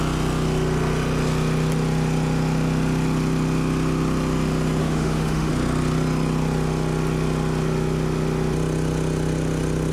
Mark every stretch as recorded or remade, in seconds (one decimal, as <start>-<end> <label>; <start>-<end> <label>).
0.0-4.8 recorded; 4.8-5.5 remade; 5.5-9.9 recorded